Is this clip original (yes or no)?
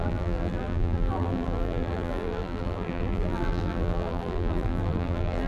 no